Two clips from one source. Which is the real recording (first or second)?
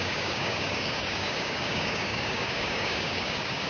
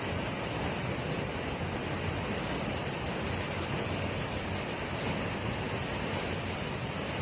second